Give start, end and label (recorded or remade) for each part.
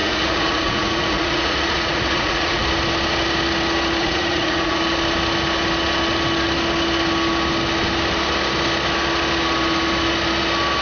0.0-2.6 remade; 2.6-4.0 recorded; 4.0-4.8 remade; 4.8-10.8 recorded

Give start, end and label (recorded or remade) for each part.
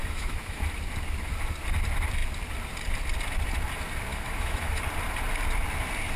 0.0-0.6 remade; 0.6-4.1 recorded; 4.1-4.8 remade; 4.8-6.2 recorded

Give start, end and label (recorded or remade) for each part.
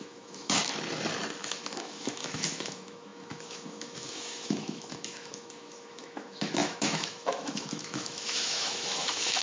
0.0-0.7 remade; 0.7-1.4 recorded; 1.4-9.4 remade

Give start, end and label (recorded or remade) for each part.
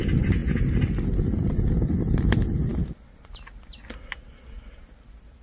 0.0-5.4 recorded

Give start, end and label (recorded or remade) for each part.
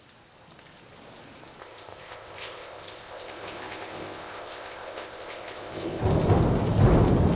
0.0-1.6 recorded; 1.6-6.0 remade; 6.0-7.4 recorded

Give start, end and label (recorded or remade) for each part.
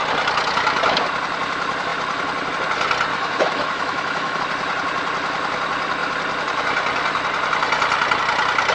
0.0-3.1 recorded; 3.1-4.4 remade; 4.4-8.7 recorded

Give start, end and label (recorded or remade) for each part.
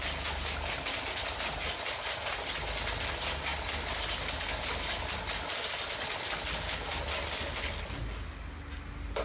0.0-9.2 recorded